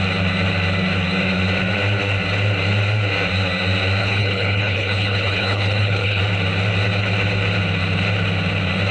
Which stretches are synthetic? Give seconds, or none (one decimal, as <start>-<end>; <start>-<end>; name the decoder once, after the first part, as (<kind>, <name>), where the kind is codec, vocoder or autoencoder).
4.0-6.2 (codec, HILCodec)